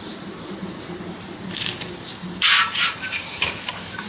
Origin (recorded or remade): remade